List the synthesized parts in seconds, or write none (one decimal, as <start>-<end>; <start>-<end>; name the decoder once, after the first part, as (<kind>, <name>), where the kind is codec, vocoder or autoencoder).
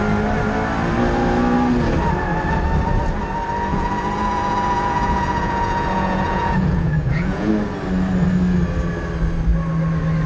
3.7-7.5 (vocoder, Vocos)